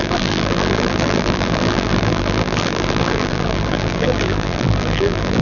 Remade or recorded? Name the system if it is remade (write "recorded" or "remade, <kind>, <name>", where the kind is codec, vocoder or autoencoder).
remade, vocoder, BigVGAN v2